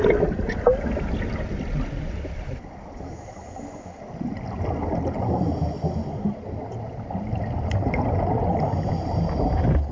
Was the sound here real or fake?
real